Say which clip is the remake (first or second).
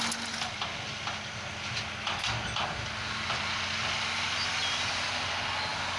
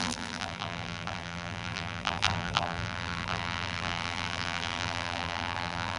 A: second